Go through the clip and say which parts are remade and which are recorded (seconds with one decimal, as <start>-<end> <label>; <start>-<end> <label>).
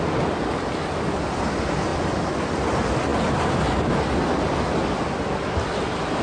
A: 0.0-6.2 recorded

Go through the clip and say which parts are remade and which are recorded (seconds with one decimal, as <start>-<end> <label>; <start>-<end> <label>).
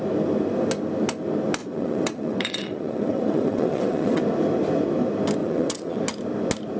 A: 0.0-1.6 recorded; 1.6-4.2 remade; 4.2-5.4 recorded; 5.4-6.0 remade; 6.0-6.8 recorded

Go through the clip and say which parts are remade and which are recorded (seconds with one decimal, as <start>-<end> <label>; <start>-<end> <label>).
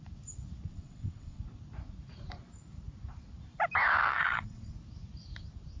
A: 0.0-0.7 recorded; 0.7-1.4 remade; 1.4-4.1 recorded; 4.1-4.7 remade; 4.7-5.8 recorded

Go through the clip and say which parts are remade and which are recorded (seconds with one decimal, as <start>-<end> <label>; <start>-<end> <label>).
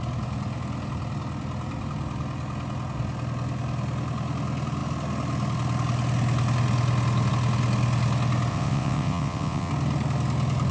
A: 0.0-8.5 recorded; 8.5-9.7 remade; 9.7-10.7 recorded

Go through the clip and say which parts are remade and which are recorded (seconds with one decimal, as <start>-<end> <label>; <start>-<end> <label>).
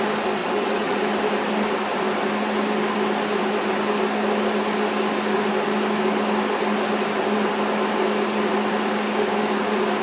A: 0.0-0.4 recorded; 0.4-1.0 remade; 1.0-10.0 recorded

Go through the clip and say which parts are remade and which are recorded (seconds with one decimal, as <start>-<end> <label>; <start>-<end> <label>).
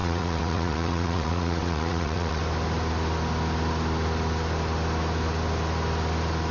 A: 0.0-2.4 remade; 2.4-6.5 recorded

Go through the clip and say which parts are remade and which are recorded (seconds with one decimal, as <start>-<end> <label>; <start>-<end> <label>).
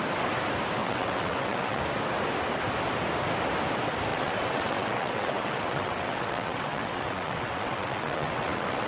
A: 0.0-0.8 recorded; 0.8-1.8 remade; 1.8-4.1 recorded; 4.1-8.9 remade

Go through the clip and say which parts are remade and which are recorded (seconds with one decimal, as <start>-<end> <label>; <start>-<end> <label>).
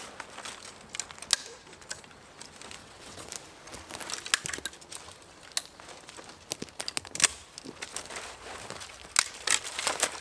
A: 0.0-2.8 recorded; 2.8-3.3 remade; 3.3-10.2 recorded